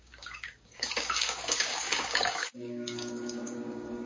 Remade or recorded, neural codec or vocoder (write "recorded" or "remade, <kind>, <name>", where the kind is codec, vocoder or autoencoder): remade, codec, DAC